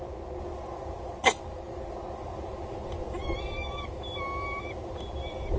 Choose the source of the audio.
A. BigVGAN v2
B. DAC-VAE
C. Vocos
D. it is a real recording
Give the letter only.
D